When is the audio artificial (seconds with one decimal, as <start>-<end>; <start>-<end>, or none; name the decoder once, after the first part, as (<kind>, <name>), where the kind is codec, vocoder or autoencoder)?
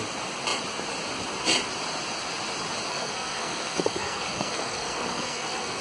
2.9-5.8 (codec, SNAC)